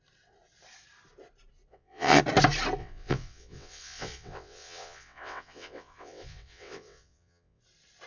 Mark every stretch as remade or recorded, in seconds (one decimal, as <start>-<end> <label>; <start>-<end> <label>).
0.0-1.7 recorded; 1.7-2.2 remade; 2.2-2.8 recorded; 2.8-7.6 remade; 7.6-8.1 recorded